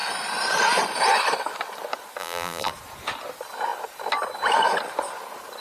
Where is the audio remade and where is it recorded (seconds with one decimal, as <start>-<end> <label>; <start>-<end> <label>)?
0.0-2.2 recorded; 2.2-2.7 remade; 2.7-5.6 recorded